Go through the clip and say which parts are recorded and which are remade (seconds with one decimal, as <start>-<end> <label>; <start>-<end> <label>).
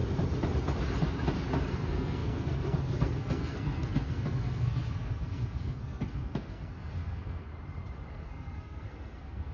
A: 0.0-1.7 recorded; 1.7-7.5 remade; 7.5-8.1 recorded; 8.1-9.5 remade